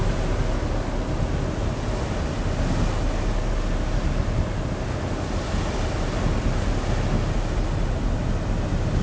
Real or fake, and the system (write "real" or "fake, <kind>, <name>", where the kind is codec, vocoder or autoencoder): real